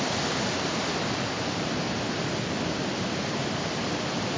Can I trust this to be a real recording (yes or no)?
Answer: yes